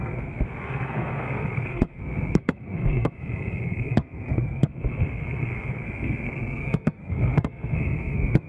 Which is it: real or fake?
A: fake